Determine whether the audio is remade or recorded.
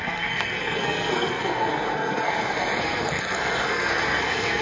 remade